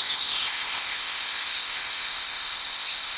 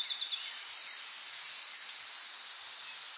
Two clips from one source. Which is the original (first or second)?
second